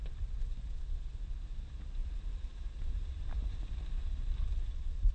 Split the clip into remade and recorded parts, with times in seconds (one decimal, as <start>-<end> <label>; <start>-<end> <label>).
0.0-2.0 recorded; 2.0-5.1 remade